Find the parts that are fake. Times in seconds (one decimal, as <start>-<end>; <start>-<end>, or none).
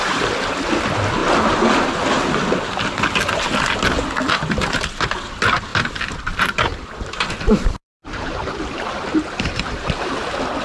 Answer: 5.7-9.9